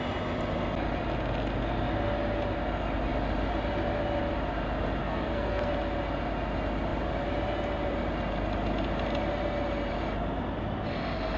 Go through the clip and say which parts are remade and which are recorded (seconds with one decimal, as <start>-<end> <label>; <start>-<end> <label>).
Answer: 0.0-5.0 recorded; 5.0-5.7 remade; 5.7-11.4 recorded